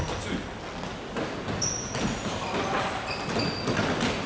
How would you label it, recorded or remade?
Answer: recorded